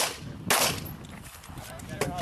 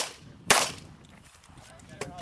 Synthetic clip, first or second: second